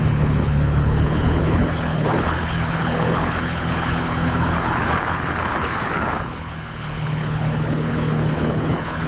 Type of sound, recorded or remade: remade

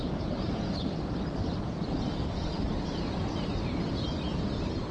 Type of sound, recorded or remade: recorded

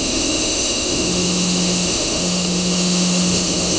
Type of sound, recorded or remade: remade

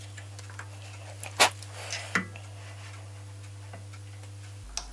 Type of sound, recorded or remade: recorded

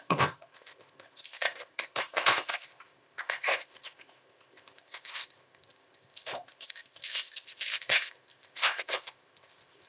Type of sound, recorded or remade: remade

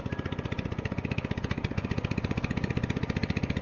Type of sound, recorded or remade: recorded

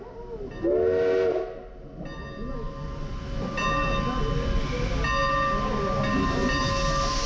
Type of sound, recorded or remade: recorded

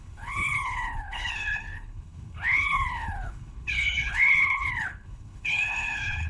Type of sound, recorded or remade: remade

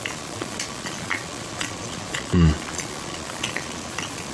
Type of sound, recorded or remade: remade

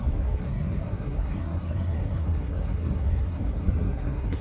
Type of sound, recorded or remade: remade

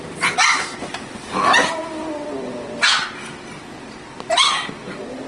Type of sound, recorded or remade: recorded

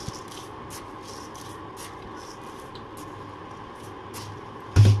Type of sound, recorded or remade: recorded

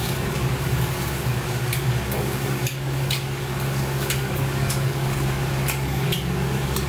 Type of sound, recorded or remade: remade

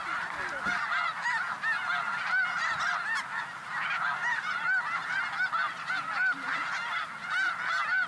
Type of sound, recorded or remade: recorded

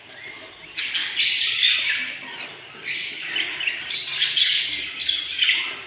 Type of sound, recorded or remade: recorded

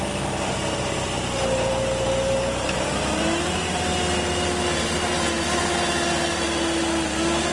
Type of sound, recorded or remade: recorded